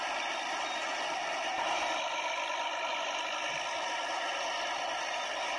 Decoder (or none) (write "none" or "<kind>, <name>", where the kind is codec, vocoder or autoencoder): none